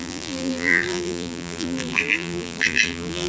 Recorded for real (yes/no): no